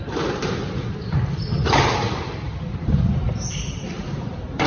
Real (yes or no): no